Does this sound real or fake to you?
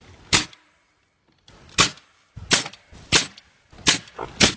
real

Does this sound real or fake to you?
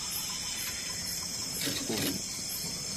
fake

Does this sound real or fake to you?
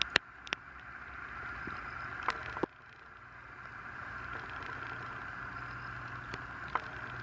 real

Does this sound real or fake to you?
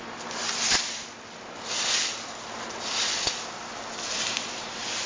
real